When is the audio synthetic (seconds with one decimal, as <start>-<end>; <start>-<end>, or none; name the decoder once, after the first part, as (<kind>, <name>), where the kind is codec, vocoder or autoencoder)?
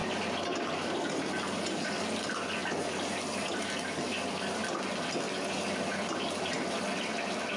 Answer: none